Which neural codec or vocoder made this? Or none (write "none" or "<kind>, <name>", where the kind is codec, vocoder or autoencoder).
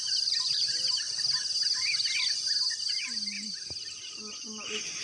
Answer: none